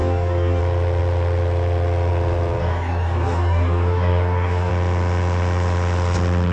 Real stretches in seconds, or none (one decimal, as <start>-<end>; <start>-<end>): 0.6-2.6; 4.7-6.5